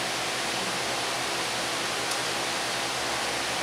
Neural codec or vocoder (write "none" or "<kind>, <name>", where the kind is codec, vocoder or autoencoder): none